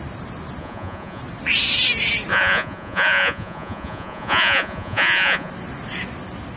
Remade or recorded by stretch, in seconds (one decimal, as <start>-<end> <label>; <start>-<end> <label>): 0.0-0.6 recorded; 0.6-1.2 remade; 1.2-2.3 recorded; 2.3-5.5 remade; 5.5-6.6 recorded